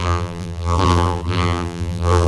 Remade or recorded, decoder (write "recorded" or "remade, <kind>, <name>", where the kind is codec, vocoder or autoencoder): remade, vocoder, BigVGAN v2